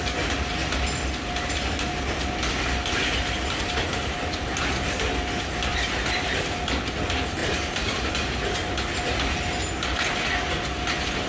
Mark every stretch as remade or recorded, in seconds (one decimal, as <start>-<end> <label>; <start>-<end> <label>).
0.0-5.7 recorded; 5.7-6.3 remade; 6.3-7.4 recorded; 7.4-8.1 remade; 8.1-11.3 recorded